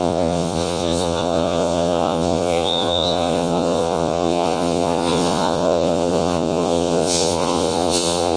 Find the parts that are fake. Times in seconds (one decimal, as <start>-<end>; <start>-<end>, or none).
0.0-8.4